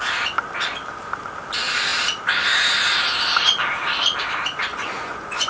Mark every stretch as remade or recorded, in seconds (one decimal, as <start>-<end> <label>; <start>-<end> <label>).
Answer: 0.0-4.7 recorded; 4.7-5.5 remade